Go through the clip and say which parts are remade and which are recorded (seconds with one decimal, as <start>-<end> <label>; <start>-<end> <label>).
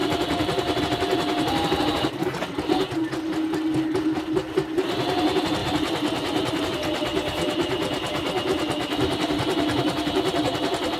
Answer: 0.0-0.8 remade; 0.8-11.0 recorded